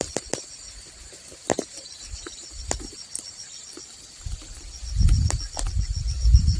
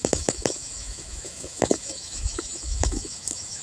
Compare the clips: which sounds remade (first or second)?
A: second